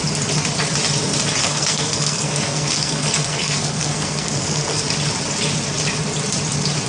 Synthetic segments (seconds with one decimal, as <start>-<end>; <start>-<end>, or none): 1.4-4.8